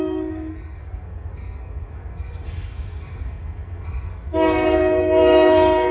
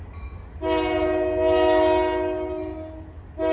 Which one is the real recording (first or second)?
second